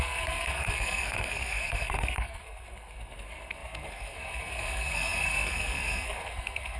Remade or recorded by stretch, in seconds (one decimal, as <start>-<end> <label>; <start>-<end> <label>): 0.0-6.8 remade